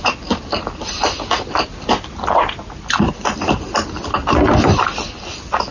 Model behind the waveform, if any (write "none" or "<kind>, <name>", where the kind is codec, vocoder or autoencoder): none